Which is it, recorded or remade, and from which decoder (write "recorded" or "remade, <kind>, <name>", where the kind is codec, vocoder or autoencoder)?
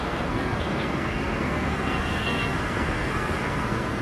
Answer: remade, codec, SNAC